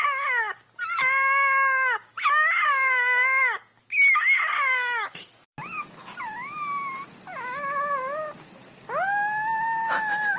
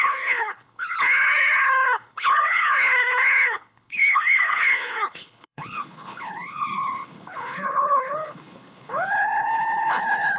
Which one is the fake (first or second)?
second